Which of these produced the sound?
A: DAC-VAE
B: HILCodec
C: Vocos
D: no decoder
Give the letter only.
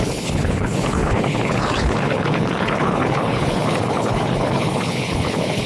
B